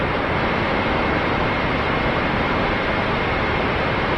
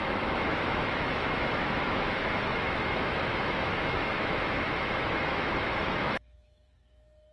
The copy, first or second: second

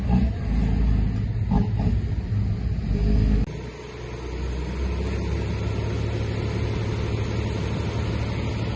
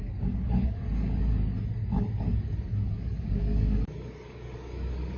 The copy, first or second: second